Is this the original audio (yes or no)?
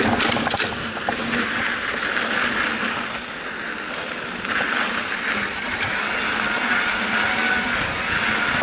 yes